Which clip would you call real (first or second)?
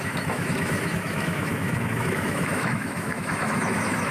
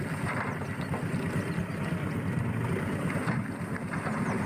second